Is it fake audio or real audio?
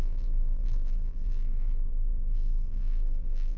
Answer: fake